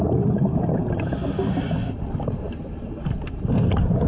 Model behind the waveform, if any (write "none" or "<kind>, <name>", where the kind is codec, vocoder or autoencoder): none